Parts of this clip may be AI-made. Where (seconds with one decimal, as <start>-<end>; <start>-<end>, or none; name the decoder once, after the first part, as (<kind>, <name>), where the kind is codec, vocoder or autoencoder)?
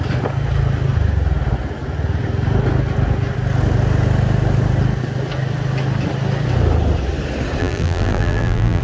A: 7.6-8.8 (vocoder, BigVGAN v2)